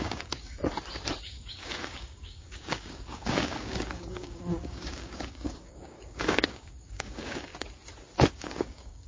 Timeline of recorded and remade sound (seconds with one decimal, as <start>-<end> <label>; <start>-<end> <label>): 0.0-0.6 remade; 0.6-1.2 recorded; 1.2-7.5 remade; 7.5-8.3 recorded; 8.3-9.1 remade